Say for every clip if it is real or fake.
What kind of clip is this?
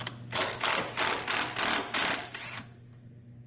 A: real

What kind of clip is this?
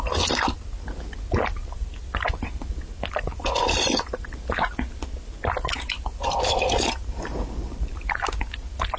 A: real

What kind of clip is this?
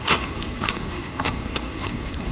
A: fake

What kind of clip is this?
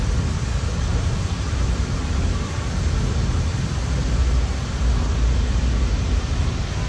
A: real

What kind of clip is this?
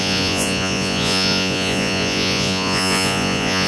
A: fake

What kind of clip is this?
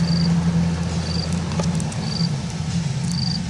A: real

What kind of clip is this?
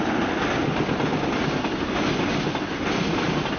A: real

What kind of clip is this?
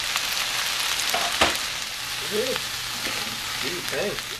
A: real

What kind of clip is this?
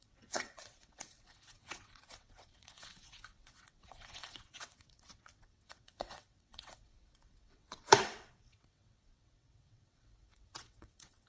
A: fake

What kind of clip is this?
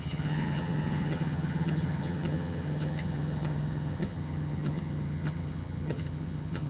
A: fake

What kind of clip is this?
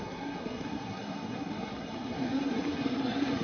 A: fake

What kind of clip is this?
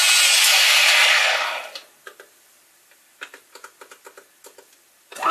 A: real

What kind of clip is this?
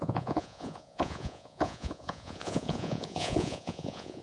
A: fake